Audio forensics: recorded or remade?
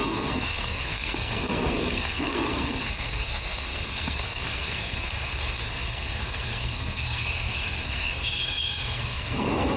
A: remade